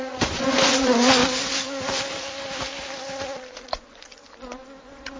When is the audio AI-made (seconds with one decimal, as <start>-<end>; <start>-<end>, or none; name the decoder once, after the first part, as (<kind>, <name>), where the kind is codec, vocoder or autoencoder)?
0.0-1.2 (vocoder, Vocos); 3.5-4.2; 4.8-5.2